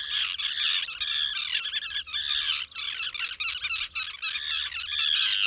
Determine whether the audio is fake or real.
real